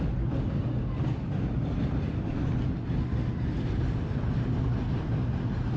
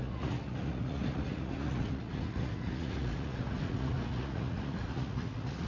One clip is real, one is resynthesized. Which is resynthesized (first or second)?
second